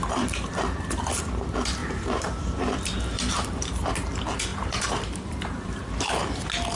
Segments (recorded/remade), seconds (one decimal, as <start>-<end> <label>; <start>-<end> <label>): 0.0-0.5 remade; 0.5-1.8 recorded; 1.8-3.9 remade; 3.9-4.5 recorded; 4.5-5.8 remade; 5.8-6.8 recorded